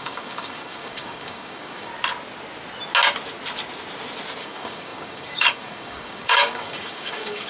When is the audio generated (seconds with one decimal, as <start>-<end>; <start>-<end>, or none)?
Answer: 0.0-1.9; 4.4-7.5